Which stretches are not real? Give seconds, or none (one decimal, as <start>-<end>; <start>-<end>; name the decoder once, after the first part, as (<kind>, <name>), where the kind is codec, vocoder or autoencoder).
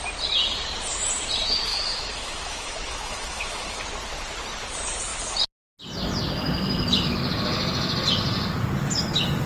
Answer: 1.7-3.8 (autoencoder, DAC-VAE)